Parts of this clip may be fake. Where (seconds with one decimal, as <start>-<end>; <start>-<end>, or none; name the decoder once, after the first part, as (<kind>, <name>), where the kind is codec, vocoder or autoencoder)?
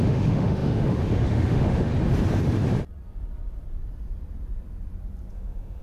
0.0-1.9 (autoencoder, DAC-VAE); 5.3-5.8